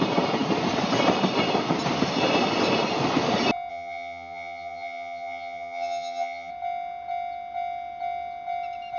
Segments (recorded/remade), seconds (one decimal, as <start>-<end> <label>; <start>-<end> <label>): 0.0-3.7 recorded; 3.7-6.5 remade; 6.5-9.0 recorded